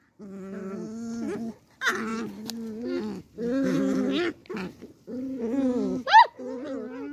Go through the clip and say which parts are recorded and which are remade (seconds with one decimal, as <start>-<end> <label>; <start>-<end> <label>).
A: 0.0-4.4 recorded; 4.4-6.2 remade; 6.2-7.1 recorded